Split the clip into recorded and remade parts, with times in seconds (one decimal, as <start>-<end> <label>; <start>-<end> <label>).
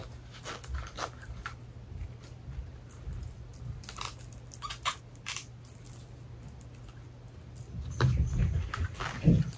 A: 0.0-9.6 recorded